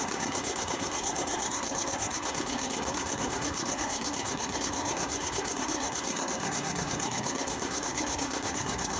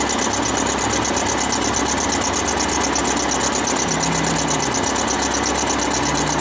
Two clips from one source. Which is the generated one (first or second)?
first